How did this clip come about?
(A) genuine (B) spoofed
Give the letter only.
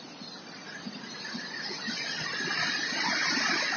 A